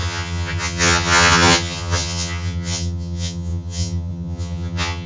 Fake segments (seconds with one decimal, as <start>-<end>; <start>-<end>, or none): 0.0-5.1